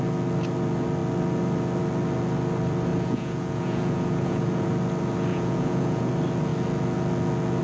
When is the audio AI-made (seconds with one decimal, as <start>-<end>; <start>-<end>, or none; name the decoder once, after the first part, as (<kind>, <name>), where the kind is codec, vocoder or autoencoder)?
2.9-4.7 (vocoder, Vocos); 5.3-6.1